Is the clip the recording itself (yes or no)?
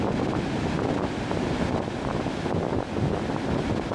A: yes